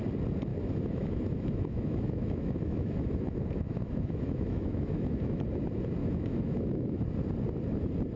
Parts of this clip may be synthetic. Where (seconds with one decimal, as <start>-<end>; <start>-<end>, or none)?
0.5-5.4; 6.0-7.0